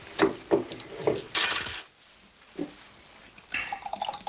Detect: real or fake real